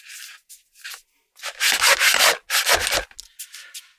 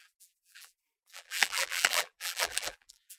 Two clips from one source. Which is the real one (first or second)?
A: first